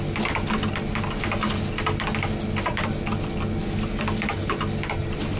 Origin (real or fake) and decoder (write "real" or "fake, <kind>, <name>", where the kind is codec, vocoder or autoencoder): real